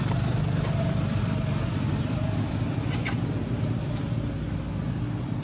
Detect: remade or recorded recorded